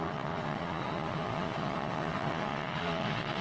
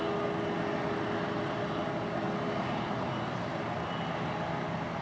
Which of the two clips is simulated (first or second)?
first